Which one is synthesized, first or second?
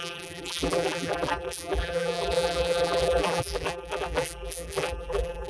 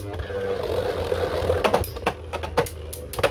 first